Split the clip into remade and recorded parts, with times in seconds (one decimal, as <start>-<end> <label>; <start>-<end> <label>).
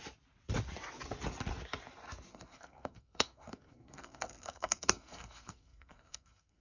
0.0-2.3 recorded; 2.3-6.6 remade